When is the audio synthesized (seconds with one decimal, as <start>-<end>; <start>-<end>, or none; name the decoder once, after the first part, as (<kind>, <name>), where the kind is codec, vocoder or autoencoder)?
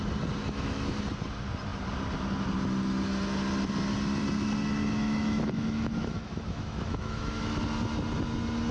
0.4-1.0 (autoencoder, DAC-VAE); 4.8-7.6